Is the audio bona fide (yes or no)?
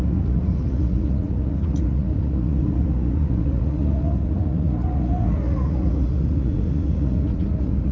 no